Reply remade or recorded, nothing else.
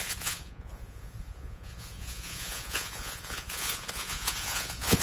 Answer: remade